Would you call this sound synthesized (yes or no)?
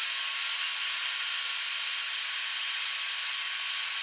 no